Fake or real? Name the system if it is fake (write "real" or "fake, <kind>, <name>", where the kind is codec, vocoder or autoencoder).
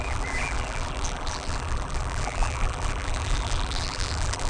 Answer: fake, vocoder, BigVGAN v2